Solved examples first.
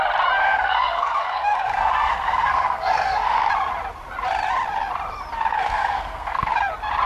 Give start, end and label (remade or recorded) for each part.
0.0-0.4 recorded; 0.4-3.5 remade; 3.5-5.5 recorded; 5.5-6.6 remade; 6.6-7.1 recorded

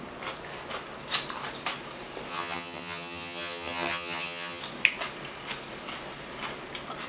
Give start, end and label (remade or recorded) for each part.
0.0-2.3 recorded; 2.3-4.6 remade; 4.6-7.1 recorded

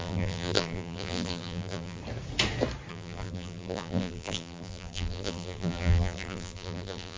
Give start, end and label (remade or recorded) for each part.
0.0-2.0 remade; 2.0-2.9 recorded; 2.9-7.2 remade

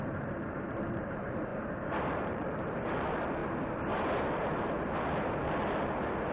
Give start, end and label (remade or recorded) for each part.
0.0-1.5 remade; 1.5-2.0 recorded; 2.0-3.4 remade; 3.4-6.3 recorded

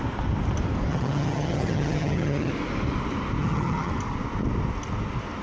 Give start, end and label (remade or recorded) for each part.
0.0-0.9 recorded; 0.9-2.5 remade; 2.5-3.4 recorded; 3.4-3.9 remade; 3.9-5.4 recorded

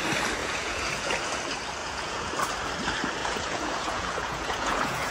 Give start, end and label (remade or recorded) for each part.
0.0-0.4 recorded; 0.4-1.1 remade; 1.1-1.8 recorded; 1.8-2.3 remade; 2.3-3.2 recorded; 3.2-5.1 remade